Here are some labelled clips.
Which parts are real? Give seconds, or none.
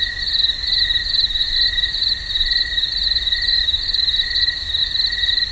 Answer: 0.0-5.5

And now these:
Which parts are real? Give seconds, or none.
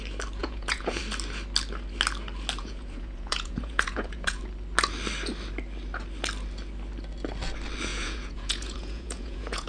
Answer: 0.0-0.4; 1.0-2.6; 4.4-7.9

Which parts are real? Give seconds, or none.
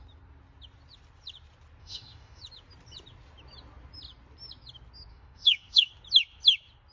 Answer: 0.0-1.8; 2.4-5.1; 5.9-6.9